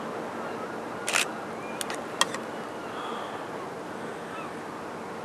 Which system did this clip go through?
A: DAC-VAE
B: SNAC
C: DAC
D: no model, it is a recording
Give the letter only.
D